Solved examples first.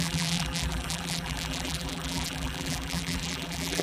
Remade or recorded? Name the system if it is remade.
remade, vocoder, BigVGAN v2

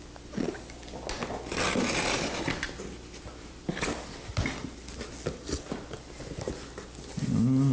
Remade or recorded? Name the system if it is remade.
recorded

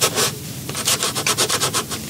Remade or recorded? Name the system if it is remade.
remade, vocoder, BigVGAN v2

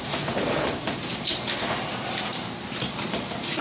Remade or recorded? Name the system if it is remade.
remade, vocoder, BigVGAN v2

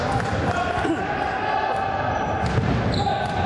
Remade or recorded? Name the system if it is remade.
recorded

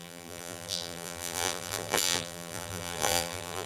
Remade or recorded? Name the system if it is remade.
remade, vocoder, BigVGAN v2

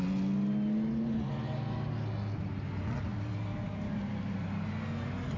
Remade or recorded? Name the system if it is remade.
recorded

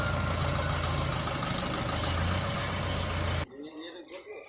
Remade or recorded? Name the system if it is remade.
recorded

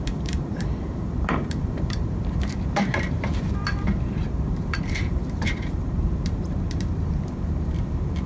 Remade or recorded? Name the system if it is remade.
remade, vocoder, BigVGAN v2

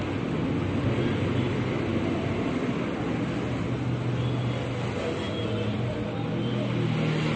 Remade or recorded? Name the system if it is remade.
recorded